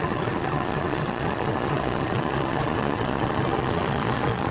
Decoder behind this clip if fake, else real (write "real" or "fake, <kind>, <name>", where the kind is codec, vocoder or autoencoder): fake, vocoder, Vocos